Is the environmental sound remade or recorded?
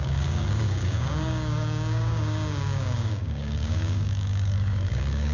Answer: remade